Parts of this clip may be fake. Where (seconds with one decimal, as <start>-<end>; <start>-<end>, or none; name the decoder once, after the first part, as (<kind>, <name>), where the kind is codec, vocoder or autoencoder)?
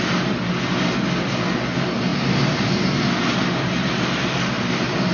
2.1-3.0 (vocoder, BigVGAN v2)